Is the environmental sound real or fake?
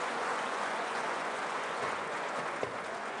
fake